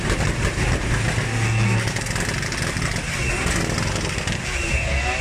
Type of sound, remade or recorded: recorded